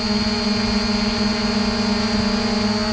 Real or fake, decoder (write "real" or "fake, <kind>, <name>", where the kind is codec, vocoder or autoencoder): real